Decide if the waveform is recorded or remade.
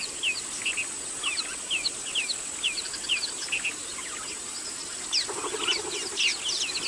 recorded